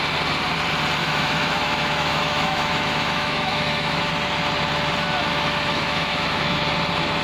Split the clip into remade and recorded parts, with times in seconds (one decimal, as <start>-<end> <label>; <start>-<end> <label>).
0.0-1.0 recorded; 1.0-4.1 remade; 4.1-5.7 recorded; 5.7-6.6 remade; 6.6-7.2 recorded